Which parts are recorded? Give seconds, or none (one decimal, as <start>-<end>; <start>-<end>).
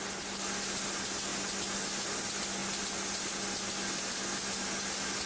0.0-5.3